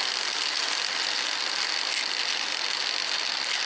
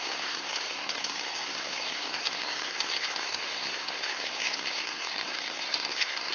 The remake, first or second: second